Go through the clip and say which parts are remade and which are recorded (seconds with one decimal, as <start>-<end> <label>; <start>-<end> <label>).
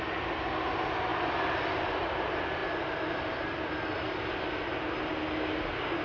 0.0-6.0 recorded